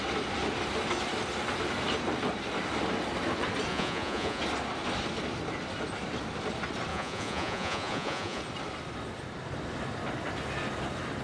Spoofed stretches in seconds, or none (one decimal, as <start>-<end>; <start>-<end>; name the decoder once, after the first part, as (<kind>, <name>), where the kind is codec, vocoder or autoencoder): 3.7-4.4 (vocoder, Vocos); 6.9-8.4